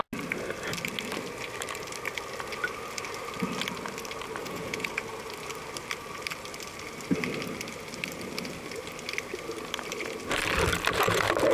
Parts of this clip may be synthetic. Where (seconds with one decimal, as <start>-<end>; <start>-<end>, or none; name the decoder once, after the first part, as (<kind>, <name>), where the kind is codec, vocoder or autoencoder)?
4.4-4.9 (vocoder, Vocos)